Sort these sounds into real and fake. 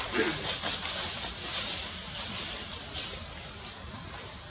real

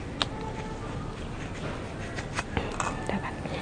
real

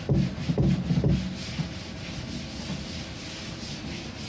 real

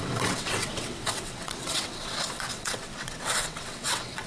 fake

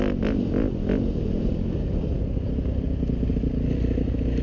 real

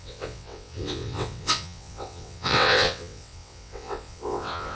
fake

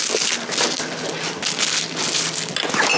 real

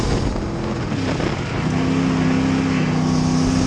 real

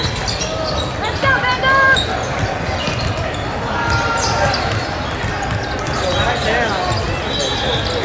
real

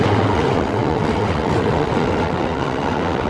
fake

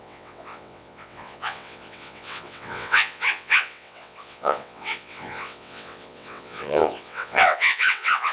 fake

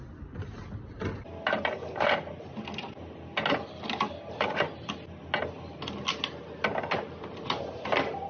real